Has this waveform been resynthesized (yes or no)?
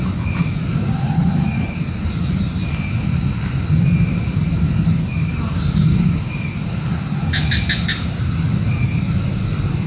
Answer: no